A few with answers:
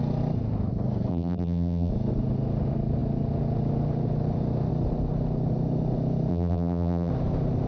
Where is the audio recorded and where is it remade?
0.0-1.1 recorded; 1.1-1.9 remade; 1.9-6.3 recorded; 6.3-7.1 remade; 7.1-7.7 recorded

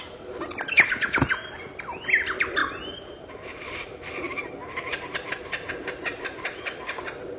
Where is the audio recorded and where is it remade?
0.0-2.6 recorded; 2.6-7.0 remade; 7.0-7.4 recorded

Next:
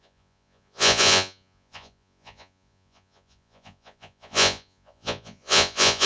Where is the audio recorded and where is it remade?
0.0-6.1 remade

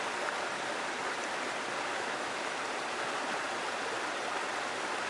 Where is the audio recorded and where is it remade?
0.0-1.9 recorded; 1.9-2.6 remade; 2.6-5.1 recorded

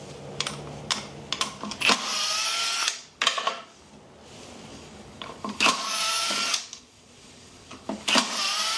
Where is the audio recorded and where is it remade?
0.0-2.4 recorded; 2.4-3.9 remade; 3.9-4.7 recorded; 4.7-8.4 remade; 8.4-8.8 recorded

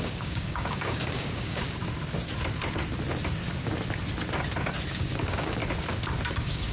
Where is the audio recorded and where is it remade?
0.0-1.8 remade; 1.8-4.9 recorded; 4.9-5.6 remade; 5.6-6.3 recorded; 6.3-6.7 remade

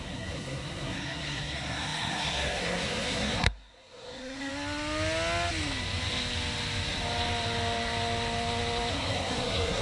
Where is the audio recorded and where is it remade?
0.0-4.5 remade; 4.5-8.9 recorded; 8.9-9.8 remade